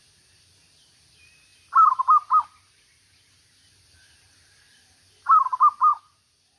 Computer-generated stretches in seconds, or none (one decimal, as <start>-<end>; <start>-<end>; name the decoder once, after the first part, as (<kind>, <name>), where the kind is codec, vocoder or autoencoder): none